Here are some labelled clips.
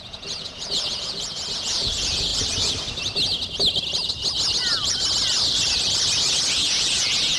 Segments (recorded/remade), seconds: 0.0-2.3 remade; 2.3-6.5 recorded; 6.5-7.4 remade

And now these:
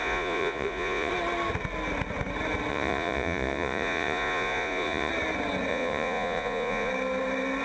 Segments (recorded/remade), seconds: 0.0-1.1 remade; 1.1-2.7 recorded; 2.7-5.1 remade; 5.1-5.7 recorded; 5.7-6.9 remade; 6.9-7.6 recorded